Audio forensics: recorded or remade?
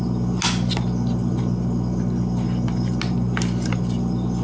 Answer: recorded